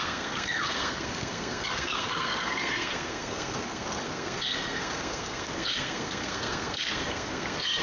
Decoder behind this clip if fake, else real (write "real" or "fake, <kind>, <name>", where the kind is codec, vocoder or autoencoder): fake, codec, SNAC